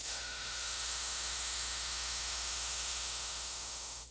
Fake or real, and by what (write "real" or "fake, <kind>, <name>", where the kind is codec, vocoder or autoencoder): fake, autoencoder, DAC-VAE